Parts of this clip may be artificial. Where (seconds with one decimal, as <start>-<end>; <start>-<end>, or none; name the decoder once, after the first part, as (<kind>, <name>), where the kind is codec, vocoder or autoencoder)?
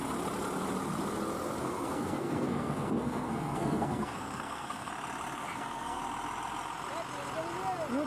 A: 1.6-4.9 (codec, SNAC); 5.4-6.0